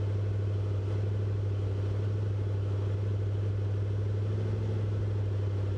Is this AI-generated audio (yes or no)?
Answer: no